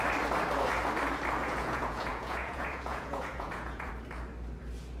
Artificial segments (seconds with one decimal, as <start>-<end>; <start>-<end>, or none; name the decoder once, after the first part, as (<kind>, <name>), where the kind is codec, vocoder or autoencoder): 1.4-3.9 (vocoder, Vocos)